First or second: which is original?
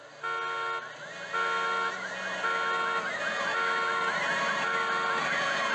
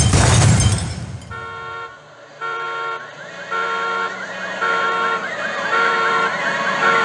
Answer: first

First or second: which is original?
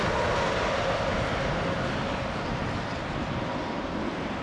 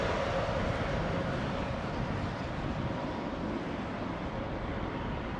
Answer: first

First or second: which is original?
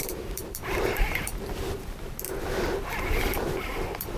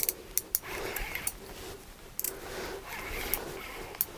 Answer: second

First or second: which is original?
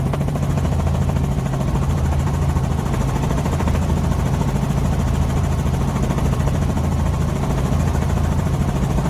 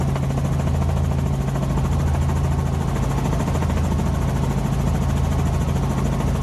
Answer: second